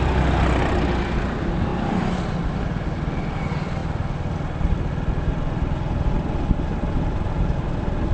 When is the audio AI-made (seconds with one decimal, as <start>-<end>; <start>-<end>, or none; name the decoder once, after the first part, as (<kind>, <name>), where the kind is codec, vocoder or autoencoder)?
none